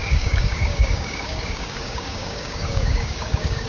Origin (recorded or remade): remade